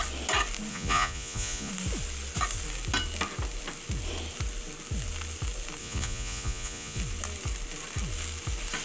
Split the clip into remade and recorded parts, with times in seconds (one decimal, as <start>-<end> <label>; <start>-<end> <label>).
0.0-0.7 recorded; 0.7-1.7 remade; 1.7-5.8 recorded; 5.8-7.0 remade; 7.0-8.8 recorded